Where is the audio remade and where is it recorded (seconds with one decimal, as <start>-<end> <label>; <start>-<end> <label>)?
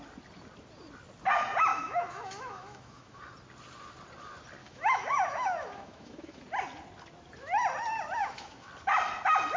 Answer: 0.0-1.7 recorded; 1.7-3.2 remade; 3.2-4.6 recorded; 4.6-6.4 remade; 6.4-8.2 recorded; 8.2-8.7 remade; 8.7-9.6 recorded